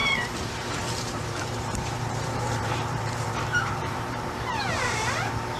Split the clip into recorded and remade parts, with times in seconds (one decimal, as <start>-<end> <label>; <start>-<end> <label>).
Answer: 0.0-5.6 remade